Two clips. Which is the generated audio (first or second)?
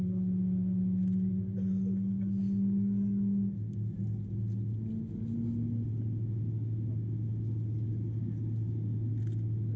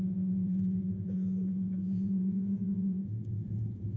second